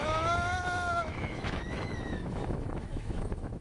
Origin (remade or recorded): remade